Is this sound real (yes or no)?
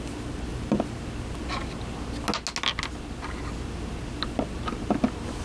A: yes